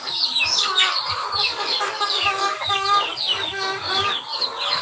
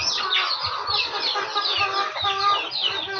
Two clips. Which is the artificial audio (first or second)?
first